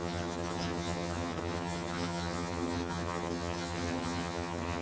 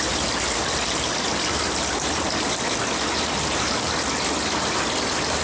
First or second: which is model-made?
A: first